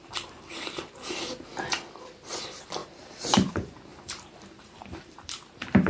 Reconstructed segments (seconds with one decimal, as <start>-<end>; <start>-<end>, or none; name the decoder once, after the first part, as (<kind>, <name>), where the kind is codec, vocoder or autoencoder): 0.0-1.5 (vocoder, BigVGAN v2); 2.4-5.9